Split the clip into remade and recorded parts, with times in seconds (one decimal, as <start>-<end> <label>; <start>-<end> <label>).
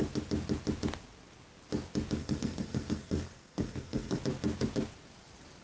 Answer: 0.0-2.2 recorded; 2.2-4.2 remade; 4.2-5.6 recorded